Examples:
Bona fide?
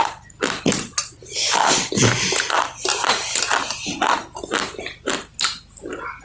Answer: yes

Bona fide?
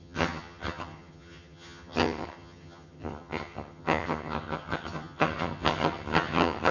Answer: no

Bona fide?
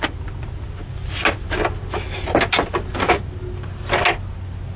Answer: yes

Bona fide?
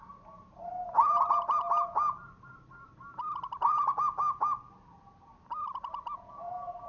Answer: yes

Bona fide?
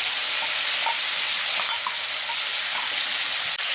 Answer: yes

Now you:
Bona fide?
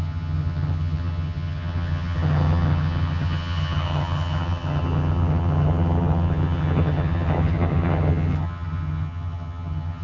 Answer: no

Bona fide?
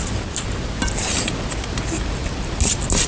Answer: yes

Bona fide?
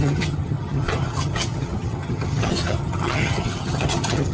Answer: no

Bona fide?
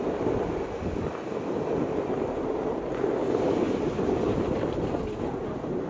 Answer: yes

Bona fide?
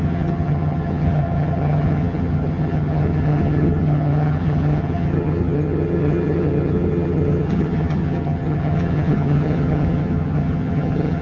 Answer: no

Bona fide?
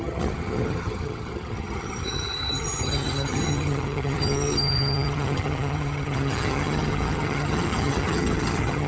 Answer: no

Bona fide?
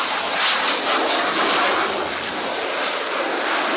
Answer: yes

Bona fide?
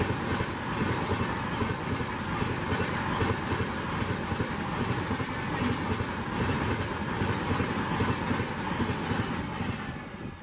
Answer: yes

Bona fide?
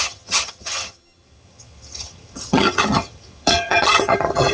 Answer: no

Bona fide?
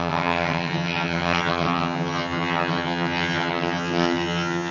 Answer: no